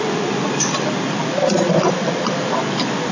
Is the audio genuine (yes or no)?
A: yes